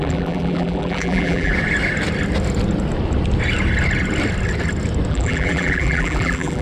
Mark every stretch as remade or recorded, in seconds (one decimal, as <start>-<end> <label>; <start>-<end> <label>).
0.0-1.5 remade; 1.5-5.1 recorded; 5.1-6.6 remade